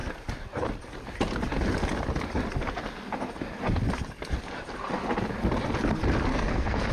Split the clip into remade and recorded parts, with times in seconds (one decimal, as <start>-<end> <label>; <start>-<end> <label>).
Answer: 0.0-6.3 recorded; 6.3-6.9 remade

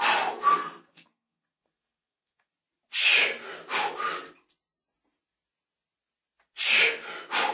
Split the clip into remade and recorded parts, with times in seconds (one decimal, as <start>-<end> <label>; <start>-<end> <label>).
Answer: 0.0-0.5 recorded; 0.5-2.5 remade; 2.5-7.5 recorded

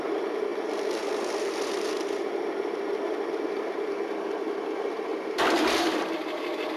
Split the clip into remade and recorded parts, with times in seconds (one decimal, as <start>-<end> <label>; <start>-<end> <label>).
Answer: 0.0-6.8 remade

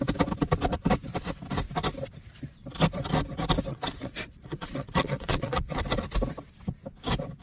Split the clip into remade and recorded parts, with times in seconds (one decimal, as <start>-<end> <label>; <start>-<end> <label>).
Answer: 0.0-3.7 recorded; 3.7-5.8 remade; 5.8-7.4 recorded

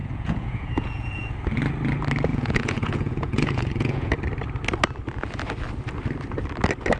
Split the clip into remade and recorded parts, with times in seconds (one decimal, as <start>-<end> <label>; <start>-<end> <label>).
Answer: 0.0-1.3 remade; 1.3-2.3 recorded; 2.3-4.1 remade; 4.1-7.0 recorded